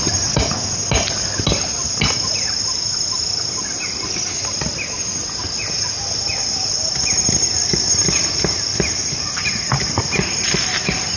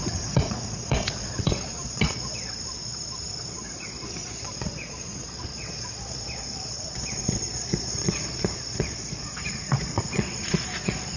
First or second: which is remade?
second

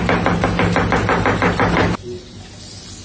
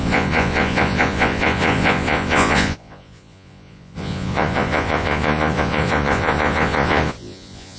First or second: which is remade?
second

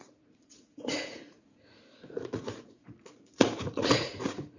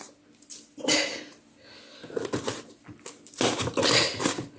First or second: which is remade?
first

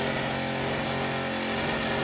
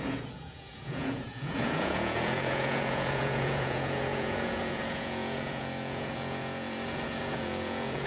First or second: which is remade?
second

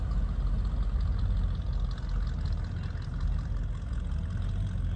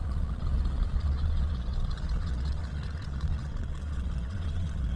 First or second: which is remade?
second